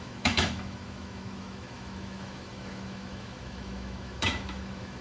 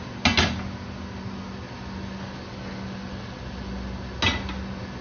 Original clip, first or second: second